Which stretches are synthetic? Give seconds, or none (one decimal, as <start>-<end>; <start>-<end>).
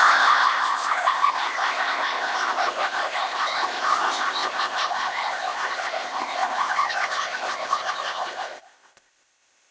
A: 0.0-9.7